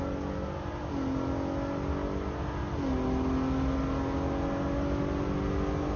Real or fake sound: real